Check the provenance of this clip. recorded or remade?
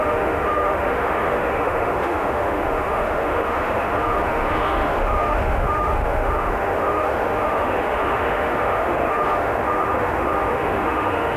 remade